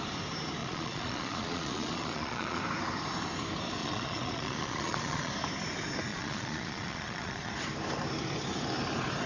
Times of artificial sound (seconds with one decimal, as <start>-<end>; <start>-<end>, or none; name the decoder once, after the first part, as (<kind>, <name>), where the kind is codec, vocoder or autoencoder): 0.6-2.6 (vocoder, Vocos); 3.8-5.3; 6.1-7.5